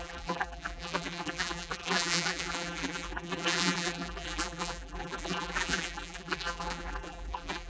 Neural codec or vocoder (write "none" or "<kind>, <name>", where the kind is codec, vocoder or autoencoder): vocoder, BigVGAN v2